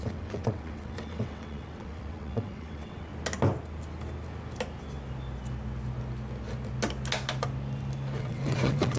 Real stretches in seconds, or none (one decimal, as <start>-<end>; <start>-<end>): 3.1-8.2